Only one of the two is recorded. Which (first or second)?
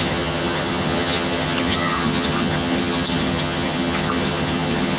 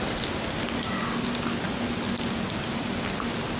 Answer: second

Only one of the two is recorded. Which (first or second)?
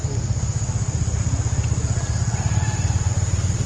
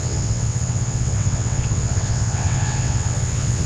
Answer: first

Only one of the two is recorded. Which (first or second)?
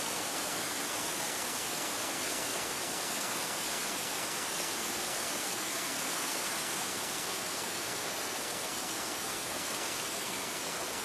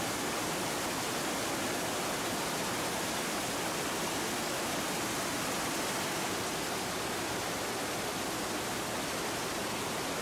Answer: second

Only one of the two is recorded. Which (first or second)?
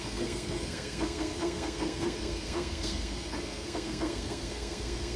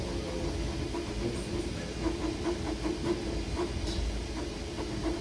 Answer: second